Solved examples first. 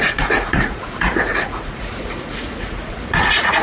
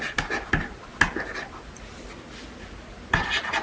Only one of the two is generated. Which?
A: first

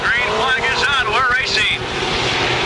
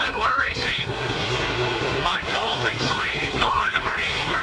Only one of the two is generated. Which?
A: second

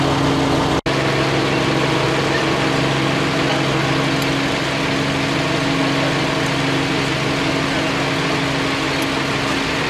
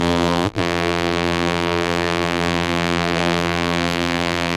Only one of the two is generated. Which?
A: second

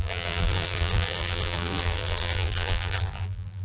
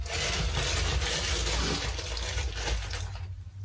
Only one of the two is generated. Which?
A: first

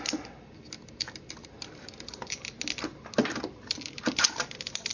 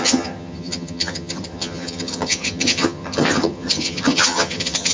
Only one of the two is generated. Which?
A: second